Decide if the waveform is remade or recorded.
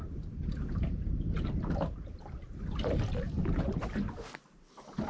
recorded